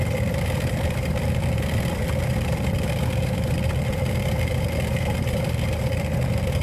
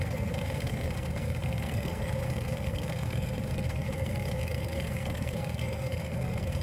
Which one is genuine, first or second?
first